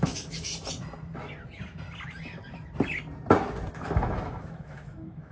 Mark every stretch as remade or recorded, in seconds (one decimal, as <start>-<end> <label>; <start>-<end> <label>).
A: 0.0-0.5 remade; 0.5-3.7 recorded; 3.7-5.3 remade